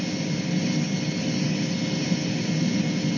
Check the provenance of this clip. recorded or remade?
recorded